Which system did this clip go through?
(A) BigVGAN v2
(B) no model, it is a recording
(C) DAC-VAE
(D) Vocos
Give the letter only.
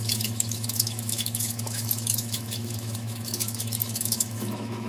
C